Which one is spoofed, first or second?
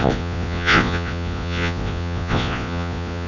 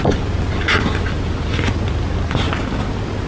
first